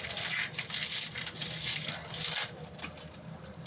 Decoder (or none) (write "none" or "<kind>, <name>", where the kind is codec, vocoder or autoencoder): vocoder, BigVGAN v2